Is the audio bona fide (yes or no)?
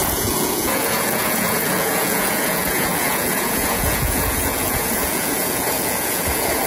no